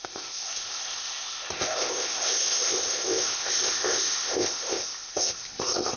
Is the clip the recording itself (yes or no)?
no